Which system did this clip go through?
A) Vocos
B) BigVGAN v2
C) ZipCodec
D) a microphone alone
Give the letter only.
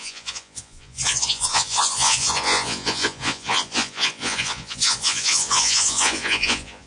A